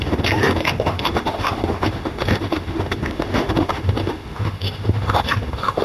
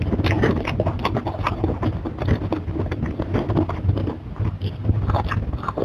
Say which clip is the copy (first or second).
first